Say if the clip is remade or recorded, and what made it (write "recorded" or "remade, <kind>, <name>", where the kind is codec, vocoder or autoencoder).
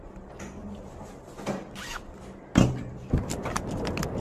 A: recorded